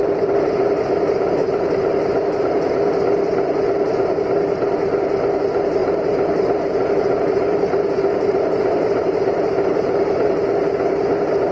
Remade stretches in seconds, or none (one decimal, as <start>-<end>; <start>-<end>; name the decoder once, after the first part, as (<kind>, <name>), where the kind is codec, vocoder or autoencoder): 1.4-2.4 (vocoder, BigVGAN v2); 5.8-10.4